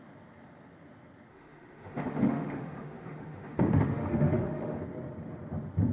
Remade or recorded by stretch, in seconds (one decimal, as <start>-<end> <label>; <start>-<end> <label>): 0.0-1.3 recorded; 1.3-4.8 remade; 4.8-5.9 recorded